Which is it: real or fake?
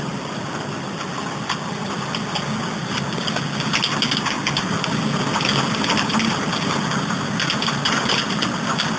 real